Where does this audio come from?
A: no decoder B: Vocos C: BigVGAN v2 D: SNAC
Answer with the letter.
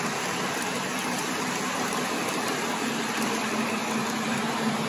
C